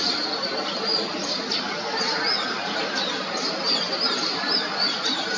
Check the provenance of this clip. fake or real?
real